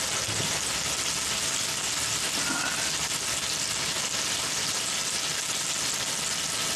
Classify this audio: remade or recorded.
recorded